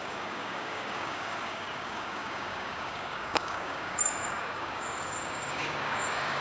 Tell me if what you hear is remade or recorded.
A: remade